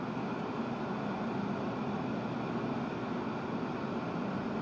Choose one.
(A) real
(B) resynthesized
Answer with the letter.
A